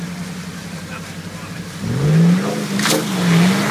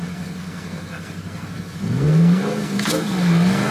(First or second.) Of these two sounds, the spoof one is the second